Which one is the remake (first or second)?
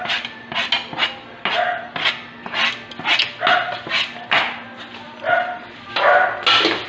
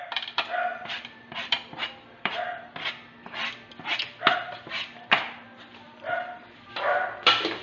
second